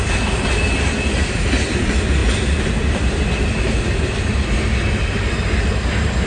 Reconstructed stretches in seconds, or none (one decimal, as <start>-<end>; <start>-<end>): none